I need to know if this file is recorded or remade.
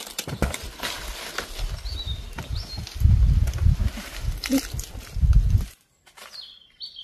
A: recorded